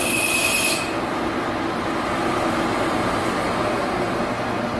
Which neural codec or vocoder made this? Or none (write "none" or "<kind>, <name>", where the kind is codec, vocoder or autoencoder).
none